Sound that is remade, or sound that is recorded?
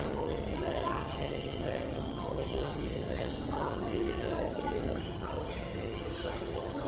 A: remade